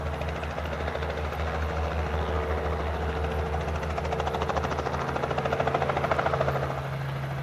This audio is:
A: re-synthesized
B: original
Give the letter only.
B